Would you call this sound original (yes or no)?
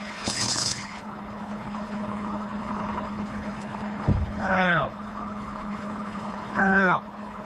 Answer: no